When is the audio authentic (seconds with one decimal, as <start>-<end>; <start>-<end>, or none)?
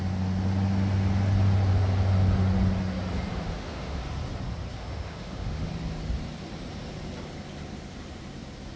0.0-3.3; 4.0-4.8; 5.7-8.8